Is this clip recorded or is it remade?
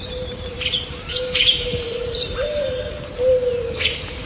remade